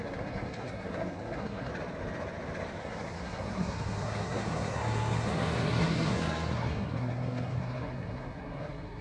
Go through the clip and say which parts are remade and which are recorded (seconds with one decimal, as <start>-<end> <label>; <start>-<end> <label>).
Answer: 0.0-1.7 remade; 1.7-2.8 recorded; 2.8-9.0 remade